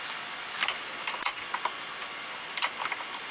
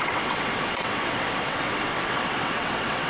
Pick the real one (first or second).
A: first